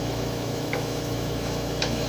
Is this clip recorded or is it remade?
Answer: remade